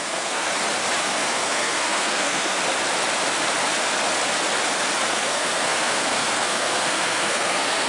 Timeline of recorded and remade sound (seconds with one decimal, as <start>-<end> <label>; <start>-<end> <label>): 0.0-0.5 remade; 0.5-1.0 recorded; 1.0-2.6 remade; 2.6-5.1 recorded; 5.1-7.9 remade